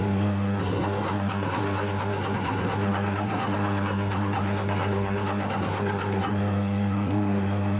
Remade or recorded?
remade